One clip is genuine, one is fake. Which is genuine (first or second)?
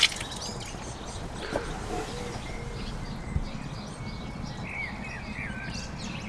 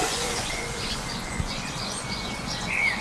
first